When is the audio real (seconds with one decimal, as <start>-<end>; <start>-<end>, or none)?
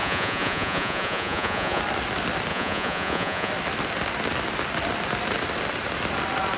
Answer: 1.8-2.5; 3.5-6.6